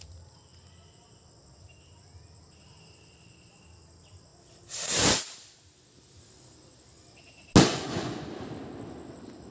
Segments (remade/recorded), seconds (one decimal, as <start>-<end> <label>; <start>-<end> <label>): 0.0-7.7 recorded; 7.7-8.3 remade; 8.3-9.5 recorded